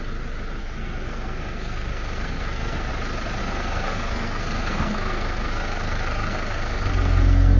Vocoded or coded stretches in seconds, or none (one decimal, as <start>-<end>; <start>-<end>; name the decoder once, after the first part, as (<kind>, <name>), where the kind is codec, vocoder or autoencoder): 0.6-2.9 (codec, SNAC); 3.4-7.6